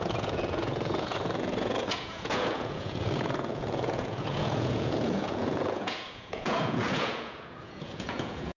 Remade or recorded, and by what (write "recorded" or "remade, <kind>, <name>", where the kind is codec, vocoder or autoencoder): remade, vocoder, Vocos